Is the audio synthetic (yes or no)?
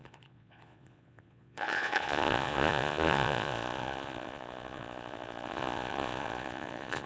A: yes